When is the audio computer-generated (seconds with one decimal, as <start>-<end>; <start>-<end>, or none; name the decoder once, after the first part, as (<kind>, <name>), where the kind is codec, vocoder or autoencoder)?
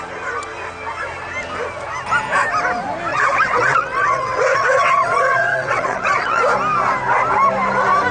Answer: 3.1-6.4 (vocoder, WaveNeXt)